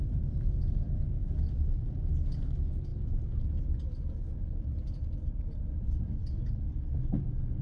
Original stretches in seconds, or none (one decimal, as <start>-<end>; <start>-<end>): 0.0-7.6